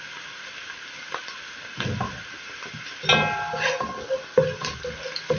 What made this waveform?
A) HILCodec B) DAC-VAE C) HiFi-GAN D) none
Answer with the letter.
D